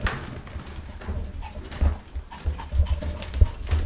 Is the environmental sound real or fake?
real